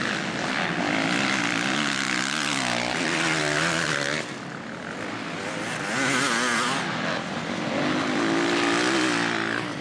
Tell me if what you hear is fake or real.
real